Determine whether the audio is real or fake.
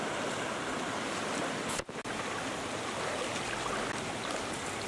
real